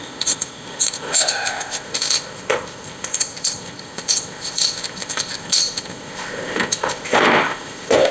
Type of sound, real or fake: fake